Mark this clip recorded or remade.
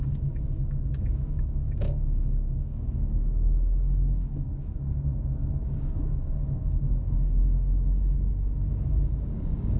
remade